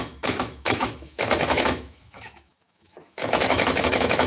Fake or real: fake